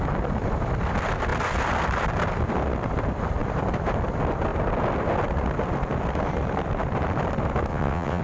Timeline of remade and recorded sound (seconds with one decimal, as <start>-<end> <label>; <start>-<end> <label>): 0.0-7.7 recorded; 7.7-8.2 remade